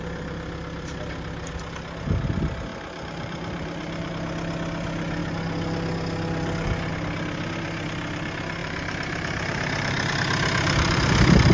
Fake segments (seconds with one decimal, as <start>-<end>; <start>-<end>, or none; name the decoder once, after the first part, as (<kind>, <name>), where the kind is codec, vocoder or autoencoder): 2.7-4.1 (vocoder, BigVGAN v2); 8.6-10.1